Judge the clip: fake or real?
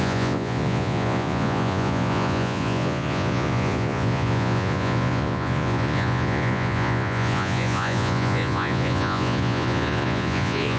fake